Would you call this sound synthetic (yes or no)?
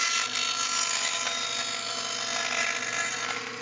no